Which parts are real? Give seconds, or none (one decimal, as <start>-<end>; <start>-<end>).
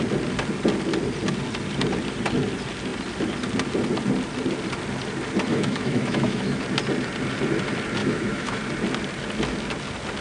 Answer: 0.0-5.5; 6.6-8.0; 8.6-10.2